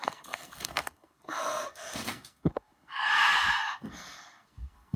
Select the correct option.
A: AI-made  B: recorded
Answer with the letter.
A